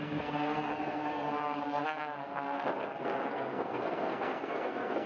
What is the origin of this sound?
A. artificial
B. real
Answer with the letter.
A